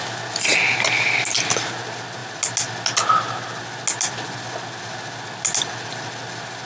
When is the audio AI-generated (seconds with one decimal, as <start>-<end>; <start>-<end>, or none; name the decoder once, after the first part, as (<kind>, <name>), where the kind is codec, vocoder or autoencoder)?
none

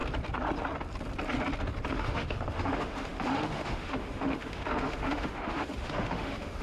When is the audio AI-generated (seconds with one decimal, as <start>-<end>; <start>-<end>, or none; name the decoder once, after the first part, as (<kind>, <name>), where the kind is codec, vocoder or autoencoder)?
1.9-6.6 (autoencoder, DAC-VAE)

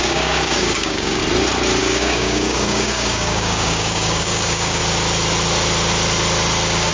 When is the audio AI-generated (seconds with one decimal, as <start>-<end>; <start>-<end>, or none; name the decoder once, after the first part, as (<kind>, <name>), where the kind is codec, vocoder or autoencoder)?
0.0-1.2 (codec, DAC); 1.8-4.8

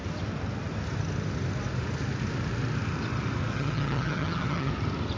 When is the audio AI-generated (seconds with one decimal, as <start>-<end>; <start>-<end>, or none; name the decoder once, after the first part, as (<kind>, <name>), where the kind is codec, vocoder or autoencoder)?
3.5-4.7 (vocoder, HiFi-GAN)